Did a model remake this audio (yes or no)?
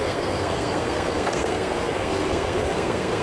yes